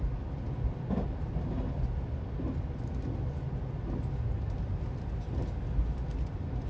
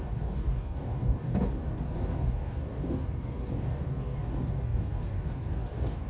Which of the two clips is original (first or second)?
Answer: first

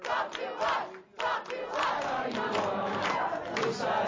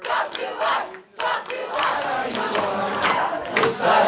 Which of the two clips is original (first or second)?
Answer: first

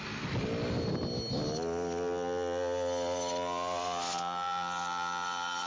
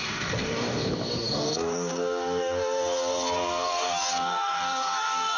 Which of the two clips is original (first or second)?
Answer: first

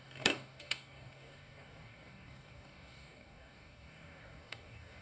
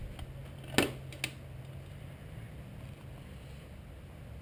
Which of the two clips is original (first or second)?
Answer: second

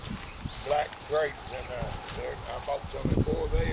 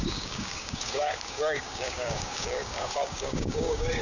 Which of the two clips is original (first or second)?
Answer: first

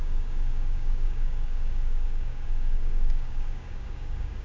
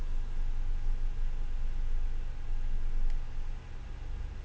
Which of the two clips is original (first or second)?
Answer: second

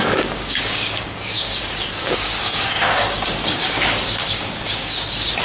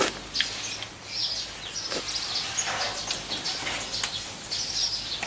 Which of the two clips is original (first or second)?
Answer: second